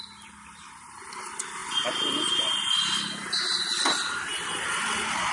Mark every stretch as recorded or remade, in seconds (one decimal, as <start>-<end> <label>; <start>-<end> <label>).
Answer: 0.0-5.3 recorded